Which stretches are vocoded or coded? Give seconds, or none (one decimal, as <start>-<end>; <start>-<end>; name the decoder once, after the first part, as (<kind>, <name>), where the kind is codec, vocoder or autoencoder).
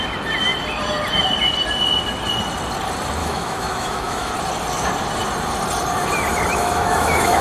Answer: 3.2-4.3 (autoencoder, DAC-VAE); 6.6-7.4